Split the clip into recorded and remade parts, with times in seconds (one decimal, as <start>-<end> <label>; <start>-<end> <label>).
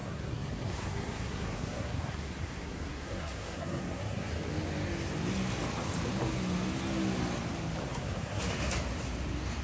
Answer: 0.0-4.3 remade; 4.3-7.8 recorded; 7.8-8.4 remade; 8.4-9.6 recorded